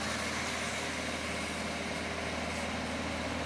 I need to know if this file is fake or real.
real